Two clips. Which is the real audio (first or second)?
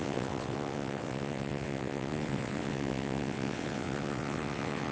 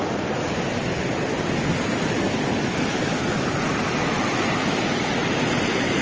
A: second